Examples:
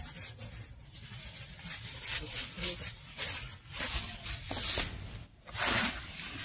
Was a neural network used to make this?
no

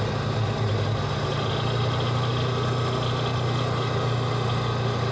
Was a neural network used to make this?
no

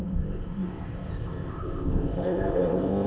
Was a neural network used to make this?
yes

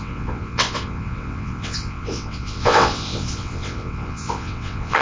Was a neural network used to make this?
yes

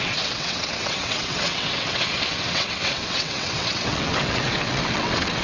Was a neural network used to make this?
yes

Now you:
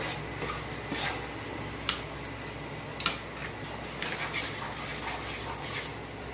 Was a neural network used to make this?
no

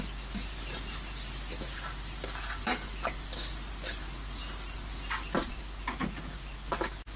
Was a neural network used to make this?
no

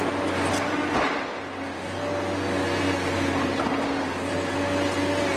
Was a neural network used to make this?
no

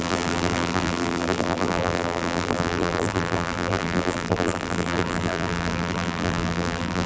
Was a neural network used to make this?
yes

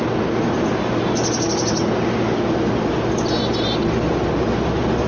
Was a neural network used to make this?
no